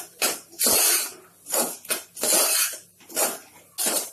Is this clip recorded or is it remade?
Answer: recorded